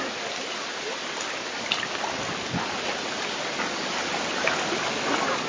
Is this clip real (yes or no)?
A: yes